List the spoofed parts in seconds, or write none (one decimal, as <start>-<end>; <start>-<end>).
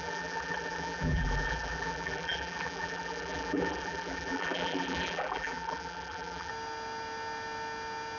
0.0-6.5